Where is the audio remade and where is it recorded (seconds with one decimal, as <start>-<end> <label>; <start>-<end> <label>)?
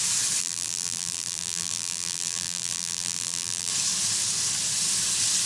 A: 0.0-0.4 recorded; 0.4-3.7 remade; 3.7-5.5 recorded